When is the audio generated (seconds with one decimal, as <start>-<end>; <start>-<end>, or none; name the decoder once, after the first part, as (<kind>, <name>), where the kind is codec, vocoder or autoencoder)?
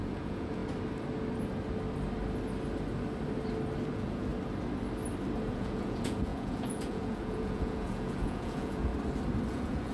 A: 0.0-0.6 (vocoder, Vocos); 3.9-4.3; 5.5-8.9; 9.5-9.9